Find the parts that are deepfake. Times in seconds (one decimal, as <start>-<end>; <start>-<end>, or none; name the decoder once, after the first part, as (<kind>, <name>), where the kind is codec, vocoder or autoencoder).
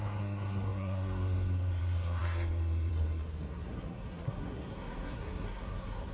0.0-6.1 (codec, SNAC)